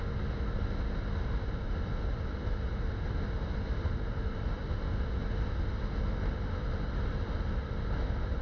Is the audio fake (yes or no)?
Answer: no